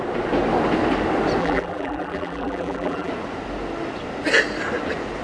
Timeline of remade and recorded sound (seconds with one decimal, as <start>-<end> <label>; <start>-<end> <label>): 0.0-1.4 recorded; 1.4-3.1 remade; 3.1-5.2 recorded